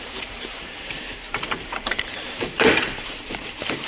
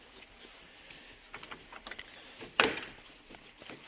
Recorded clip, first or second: second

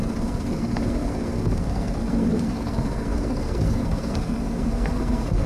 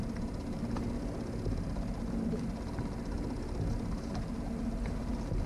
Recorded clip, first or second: second